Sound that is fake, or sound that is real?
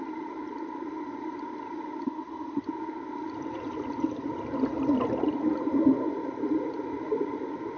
real